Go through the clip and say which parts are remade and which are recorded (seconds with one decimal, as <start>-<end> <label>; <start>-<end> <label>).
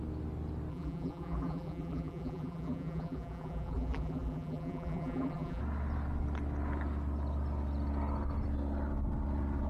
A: 0.0-0.7 recorded; 0.7-5.6 remade; 5.6-9.7 recorded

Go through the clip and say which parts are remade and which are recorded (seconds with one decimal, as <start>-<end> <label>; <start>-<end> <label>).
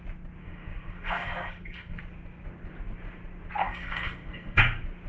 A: 0.0-0.4 recorded; 0.4-2.0 remade; 2.0-3.6 recorded; 3.6-4.6 remade; 4.6-5.1 recorded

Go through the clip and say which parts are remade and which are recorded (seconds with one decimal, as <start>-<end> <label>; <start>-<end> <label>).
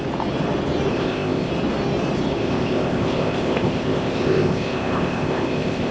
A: 0.0-0.9 recorded; 0.9-1.5 remade; 1.5-2.4 recorded; 2.4-5.9 remade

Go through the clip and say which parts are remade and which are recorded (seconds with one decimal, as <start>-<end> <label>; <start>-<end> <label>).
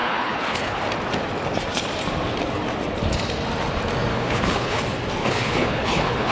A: 0.0-0.8 remade; 0.8-4.1 recorded; 4.1-4.8 remade; 4.8-5.2 recorded; 5.2-6.3 remade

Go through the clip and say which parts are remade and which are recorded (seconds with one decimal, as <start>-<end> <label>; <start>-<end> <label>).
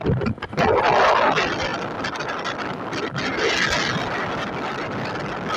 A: 0.0-5.6 recorded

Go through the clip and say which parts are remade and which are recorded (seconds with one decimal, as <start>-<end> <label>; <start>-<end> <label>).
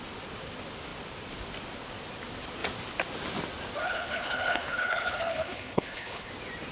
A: 0.0-3.8 recorded; 3.8-6.3 remade; 6.3-6.7 recorded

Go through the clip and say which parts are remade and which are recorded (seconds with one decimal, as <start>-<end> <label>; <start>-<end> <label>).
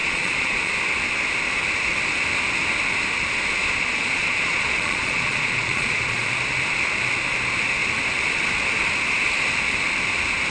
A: 0.0-0.7 remade; 0.7-3.6 recorded; 3.6-6.3 remade; 6.3-10.5 recorded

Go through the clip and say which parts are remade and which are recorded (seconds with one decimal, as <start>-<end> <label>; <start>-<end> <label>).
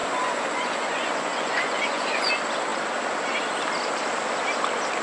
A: 0.0-2.3 remade; 2.3-5.0 recorded